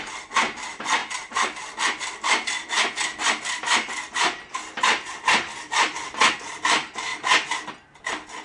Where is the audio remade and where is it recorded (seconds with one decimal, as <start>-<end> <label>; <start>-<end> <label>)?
0.0-1.0 remade; 1.0-1.8 recorded; 1.8-5.9 remade; 5.9-6.6 recorded; 6.6-7.1 remade; 7.1-8.4 recorded